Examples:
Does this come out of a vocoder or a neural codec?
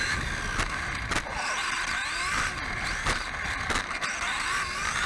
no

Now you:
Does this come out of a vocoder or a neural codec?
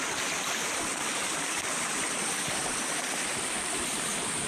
yes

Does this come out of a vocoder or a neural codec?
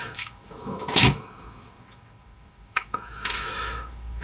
yes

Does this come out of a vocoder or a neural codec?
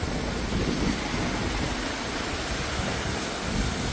no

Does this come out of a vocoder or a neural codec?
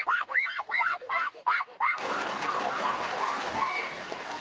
yes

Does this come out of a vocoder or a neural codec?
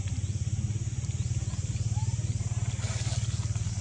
no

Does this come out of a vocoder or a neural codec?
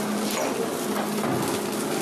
no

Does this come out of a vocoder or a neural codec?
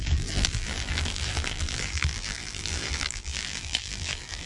yes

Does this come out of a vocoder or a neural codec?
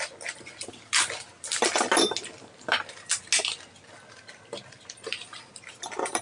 no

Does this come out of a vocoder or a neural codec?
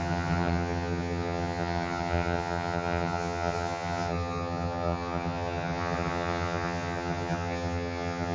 yes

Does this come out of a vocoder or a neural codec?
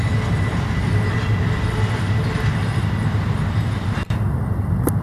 no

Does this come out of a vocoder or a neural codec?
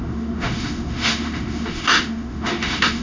yes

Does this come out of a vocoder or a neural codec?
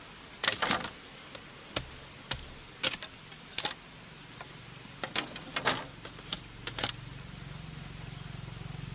no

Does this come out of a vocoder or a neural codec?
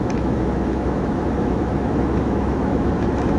yes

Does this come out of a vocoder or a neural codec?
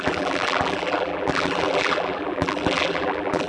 yes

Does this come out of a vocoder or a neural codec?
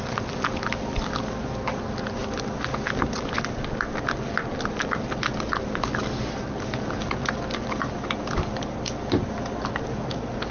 no